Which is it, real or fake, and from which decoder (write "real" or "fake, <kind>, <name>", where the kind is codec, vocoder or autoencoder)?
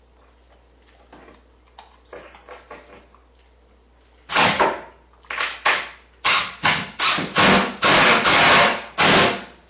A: real